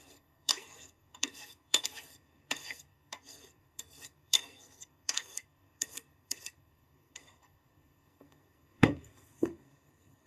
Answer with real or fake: fake